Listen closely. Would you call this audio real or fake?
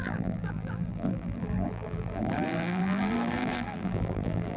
fake